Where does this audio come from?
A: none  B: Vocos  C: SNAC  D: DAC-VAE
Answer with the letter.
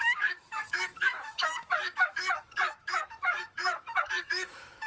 D